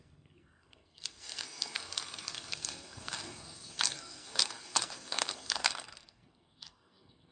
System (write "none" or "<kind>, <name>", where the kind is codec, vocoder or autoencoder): codec, SNAC